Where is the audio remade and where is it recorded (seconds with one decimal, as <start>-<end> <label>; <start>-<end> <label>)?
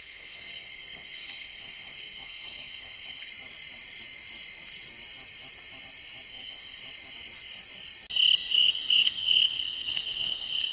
0.0-3.3 remade; 3.3-6.3 recorded; 6.3-6.8 remade; 6.8-8.5 recorded; 8.5-10.7 remade